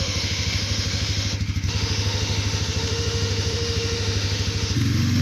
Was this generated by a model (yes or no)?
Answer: yes